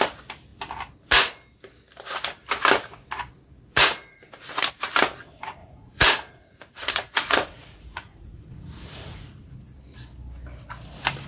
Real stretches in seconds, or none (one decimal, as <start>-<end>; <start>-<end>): 0.0-5.6; 9.5-11.3

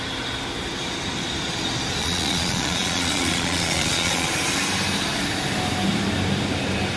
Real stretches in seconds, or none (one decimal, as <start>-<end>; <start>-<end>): 0.0-2.0; 4.3-7.0

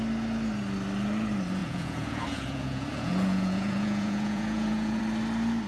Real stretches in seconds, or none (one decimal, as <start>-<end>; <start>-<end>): 0.0-1.6; 5.0-5.7

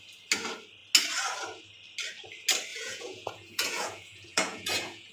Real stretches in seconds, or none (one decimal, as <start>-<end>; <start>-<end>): 0.0-2.7

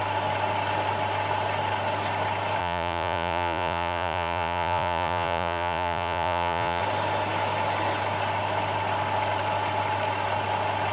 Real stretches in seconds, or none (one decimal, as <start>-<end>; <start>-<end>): 0.0-2.6; 6.8-10.9